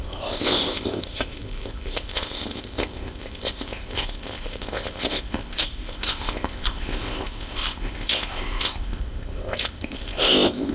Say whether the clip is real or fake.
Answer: fake